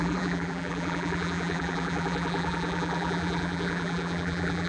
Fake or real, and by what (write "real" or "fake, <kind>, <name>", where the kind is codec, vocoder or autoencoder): fake, vocoder, BigVGAN v2